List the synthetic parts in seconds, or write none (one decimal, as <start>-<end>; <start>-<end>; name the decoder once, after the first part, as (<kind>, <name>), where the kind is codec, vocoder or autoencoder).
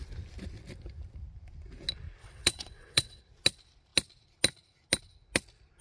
2.2-3.2 (vocoder, WaveNeXt)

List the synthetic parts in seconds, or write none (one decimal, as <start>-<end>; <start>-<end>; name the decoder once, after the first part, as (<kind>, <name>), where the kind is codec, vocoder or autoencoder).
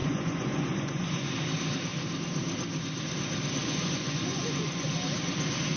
0.0-1.3 (vocoder, Vocos); 3.6-4.9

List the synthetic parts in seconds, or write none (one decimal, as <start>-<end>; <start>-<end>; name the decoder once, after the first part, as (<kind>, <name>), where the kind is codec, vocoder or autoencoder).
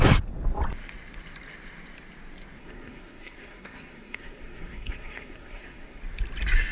2.6-6.0 (codec, SNAC)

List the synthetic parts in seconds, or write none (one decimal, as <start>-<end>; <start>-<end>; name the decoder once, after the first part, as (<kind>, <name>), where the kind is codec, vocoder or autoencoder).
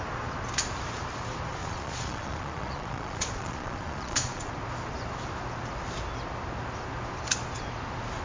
1.6-4.5 (vocoder, Vocos)